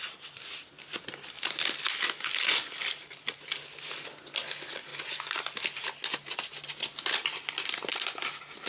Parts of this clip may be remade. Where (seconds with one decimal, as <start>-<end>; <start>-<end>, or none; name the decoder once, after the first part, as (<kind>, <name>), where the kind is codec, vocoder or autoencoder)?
none